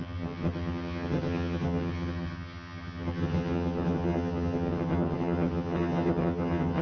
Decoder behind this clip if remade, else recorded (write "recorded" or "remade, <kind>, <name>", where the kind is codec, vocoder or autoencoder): remade, vocoder, HiFi-GAN